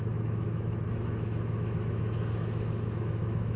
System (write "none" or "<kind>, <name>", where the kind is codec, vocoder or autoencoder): autoencoder, DAC-VAE